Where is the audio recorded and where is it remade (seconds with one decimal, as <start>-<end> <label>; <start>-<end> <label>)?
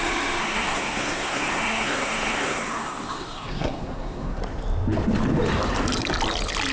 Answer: 0.0-0.4 recorded; 0.4-4.4 remade; 4.4-6.7 recorded